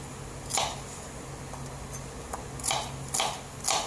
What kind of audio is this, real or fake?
real